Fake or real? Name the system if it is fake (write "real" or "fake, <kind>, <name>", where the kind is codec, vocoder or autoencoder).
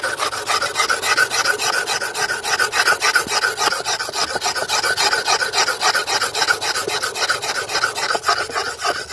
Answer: real